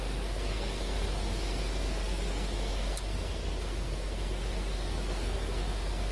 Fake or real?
fake